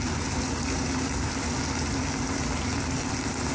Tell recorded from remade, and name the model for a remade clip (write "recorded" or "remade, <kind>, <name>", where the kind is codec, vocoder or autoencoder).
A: recorded